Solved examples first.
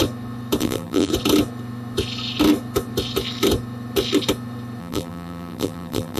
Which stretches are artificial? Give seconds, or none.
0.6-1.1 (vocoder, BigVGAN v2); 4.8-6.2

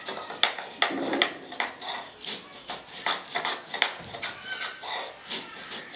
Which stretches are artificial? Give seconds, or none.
none

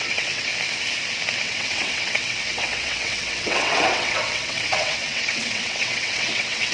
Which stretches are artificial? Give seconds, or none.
0.0-0.5 (vocoder, WaveNeXt); 1.4-6.7

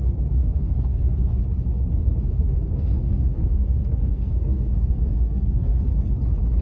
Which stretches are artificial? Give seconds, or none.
0.4-1.4 (codec, SNAC); 2.0-5.9

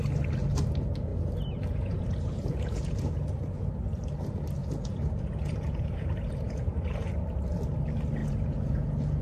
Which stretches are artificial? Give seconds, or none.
1.1-3.7 (vocoder, Vocos); 4.6-7.1; 8.2-9.2